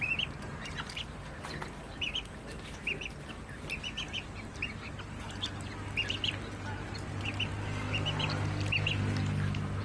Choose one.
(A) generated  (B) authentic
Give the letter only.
B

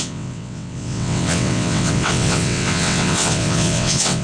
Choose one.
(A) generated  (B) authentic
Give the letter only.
A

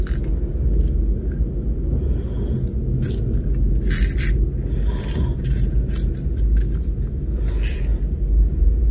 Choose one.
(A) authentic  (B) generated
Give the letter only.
A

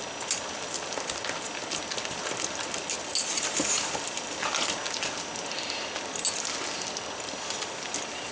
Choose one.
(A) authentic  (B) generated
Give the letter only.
A